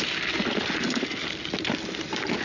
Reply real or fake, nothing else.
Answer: real